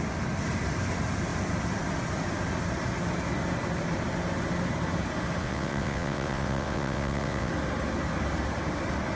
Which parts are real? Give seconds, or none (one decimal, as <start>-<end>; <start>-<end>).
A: 0.0-5.4; 7.5-9.2